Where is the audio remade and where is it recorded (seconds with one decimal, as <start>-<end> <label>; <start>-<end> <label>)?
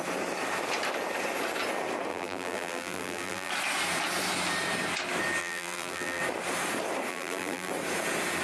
0.0-2.1 recorded; 2.1-3.5 remade; 3.5-5.4 recorded; 5.4-6.2 remade; 6.2-7.1 recorded; 7.1-7.7 remade; 7.7-8.4 recorded